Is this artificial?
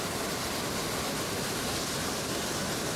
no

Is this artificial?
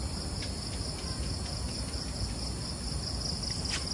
no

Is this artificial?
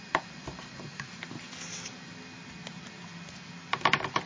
no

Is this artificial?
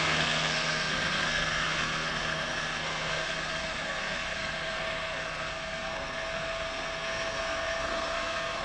yes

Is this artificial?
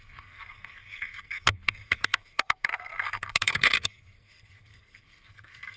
yes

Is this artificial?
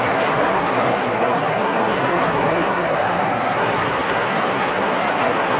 yes